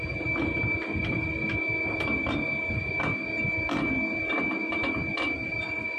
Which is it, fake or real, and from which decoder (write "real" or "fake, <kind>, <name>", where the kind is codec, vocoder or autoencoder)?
real